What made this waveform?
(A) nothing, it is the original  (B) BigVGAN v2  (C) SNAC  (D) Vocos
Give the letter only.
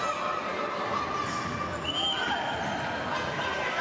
A